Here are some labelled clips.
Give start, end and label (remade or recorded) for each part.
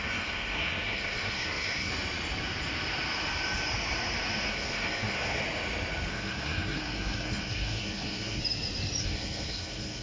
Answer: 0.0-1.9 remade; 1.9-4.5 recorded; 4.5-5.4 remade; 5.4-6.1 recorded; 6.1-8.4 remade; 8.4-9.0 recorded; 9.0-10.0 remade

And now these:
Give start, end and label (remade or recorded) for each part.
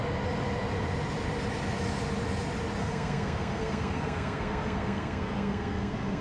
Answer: 0.0-2.8 recorded; 2.8-6.2 remade